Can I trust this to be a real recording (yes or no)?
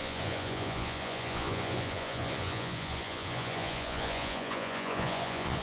no